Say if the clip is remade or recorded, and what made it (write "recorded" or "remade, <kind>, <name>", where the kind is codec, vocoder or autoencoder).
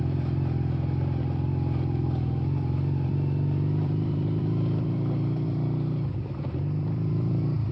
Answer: remade, vocoder, BigVGAN v2